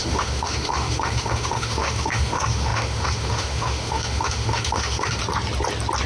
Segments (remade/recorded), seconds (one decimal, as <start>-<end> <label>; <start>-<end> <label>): 0.0-5.2 remade; 5.2-6.1 recorded